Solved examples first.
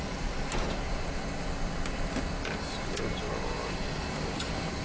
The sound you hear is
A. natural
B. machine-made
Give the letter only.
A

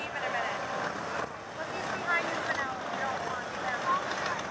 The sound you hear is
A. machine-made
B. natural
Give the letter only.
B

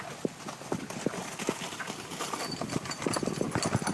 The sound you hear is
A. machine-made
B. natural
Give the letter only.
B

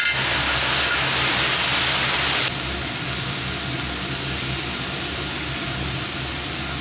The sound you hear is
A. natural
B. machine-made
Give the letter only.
A